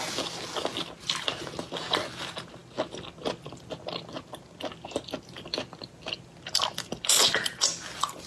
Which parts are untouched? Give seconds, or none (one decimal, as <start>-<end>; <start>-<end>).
0.0-8.3

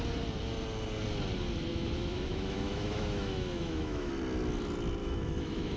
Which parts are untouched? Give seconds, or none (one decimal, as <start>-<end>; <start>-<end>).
0.0-1.7; 4.1-5.0

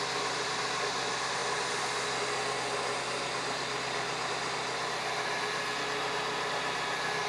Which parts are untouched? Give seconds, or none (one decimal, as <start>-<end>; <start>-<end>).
0.0-7.3